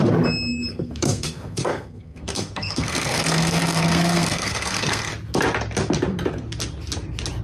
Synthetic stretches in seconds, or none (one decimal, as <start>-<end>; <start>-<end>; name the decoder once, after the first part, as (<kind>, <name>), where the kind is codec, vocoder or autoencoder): 0.7-5.1 (codec, SNAC)